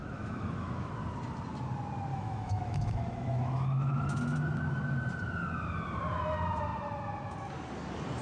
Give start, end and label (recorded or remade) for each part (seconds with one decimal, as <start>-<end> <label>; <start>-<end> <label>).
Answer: 0.0-0.9 remade; 0.9-2.1 recorded; 2.1-4.2 remade; 4.2-8.2 recorded